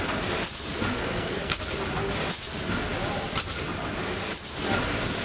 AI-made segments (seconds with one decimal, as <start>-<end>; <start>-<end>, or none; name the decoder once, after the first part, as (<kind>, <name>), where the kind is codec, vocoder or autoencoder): 0.9-1.6 (codec, SNAC)